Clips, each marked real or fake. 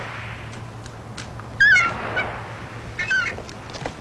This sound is real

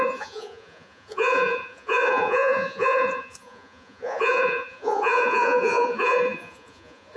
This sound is fake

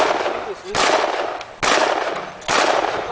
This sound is real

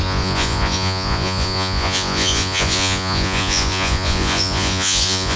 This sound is fake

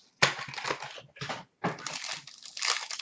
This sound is real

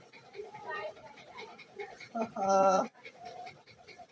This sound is fake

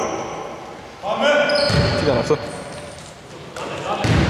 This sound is real